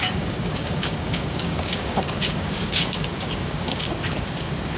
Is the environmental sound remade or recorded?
remade